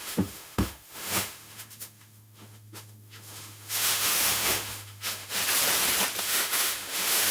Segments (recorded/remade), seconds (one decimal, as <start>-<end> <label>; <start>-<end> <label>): 0.0-5.4 remade; 5.4-6.2 recorded; 6.2-7.3 remade